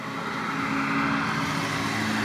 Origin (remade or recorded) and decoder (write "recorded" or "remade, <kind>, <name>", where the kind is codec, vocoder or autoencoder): recorded